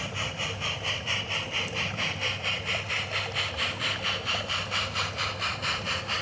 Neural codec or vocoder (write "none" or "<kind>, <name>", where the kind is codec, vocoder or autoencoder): vocoder, BigVGAN v2